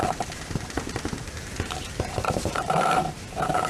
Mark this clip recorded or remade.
remade